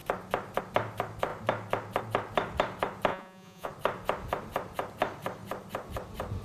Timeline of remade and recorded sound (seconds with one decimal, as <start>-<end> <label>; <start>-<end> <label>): 0.0-3.1 recorded; 3.1-3.7 remade; 3.7-6.4 recorded